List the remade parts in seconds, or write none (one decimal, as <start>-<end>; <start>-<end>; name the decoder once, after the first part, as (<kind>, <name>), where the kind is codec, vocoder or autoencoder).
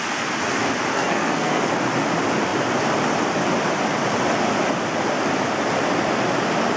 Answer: 0.9-1.6 (codec, SNAC)